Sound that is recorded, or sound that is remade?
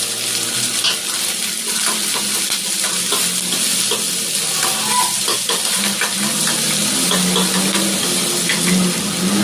recorded